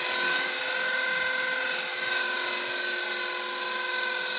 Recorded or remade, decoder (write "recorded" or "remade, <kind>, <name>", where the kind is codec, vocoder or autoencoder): recorded